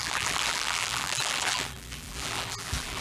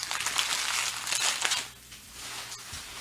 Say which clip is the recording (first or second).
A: second